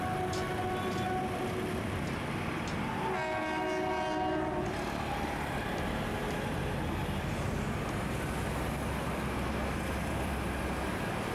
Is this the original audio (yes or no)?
yes